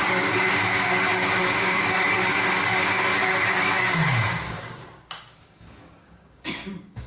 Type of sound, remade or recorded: remade